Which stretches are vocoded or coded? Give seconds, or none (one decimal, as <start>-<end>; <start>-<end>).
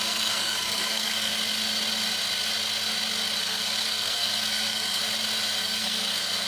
0.0-1.3; 3.4-5.0; 5.6-6.5